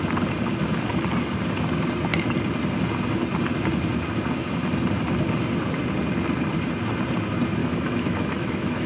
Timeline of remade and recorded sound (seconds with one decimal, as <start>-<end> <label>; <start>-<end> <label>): 0.0-7.6 recorded; 7.6-8.9 remade